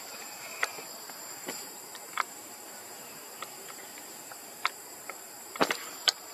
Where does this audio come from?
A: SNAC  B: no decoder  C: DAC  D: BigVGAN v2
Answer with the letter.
D